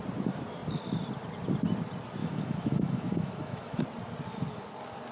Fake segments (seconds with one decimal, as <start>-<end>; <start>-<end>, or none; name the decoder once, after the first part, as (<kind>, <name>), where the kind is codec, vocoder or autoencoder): 2.2-3.8 (autoencoder, DAC-VAE)